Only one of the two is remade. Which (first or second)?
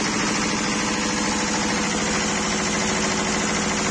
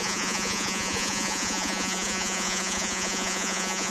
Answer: second